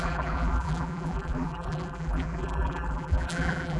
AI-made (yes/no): yes